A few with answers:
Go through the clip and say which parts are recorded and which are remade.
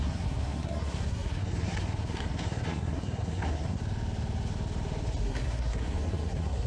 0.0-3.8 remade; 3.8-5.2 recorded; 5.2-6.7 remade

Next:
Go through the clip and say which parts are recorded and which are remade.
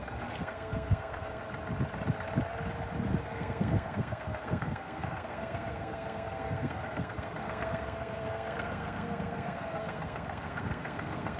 0.0-1.4 remade; 1.4-3.2 recorded; 3.2-11.4 remade